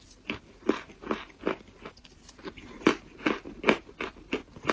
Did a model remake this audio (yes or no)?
no